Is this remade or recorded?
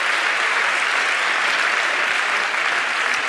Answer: recorded